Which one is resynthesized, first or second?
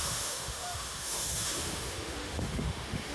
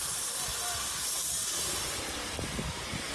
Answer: first